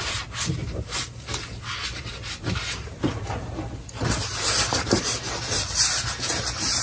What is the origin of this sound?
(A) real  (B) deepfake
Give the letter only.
B